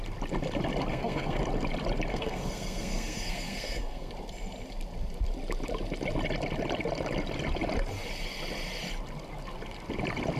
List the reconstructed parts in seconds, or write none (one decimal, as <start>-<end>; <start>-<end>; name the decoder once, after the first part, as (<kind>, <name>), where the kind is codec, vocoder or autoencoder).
0.9-1.4 (codec, SNAC); 2.1-4.1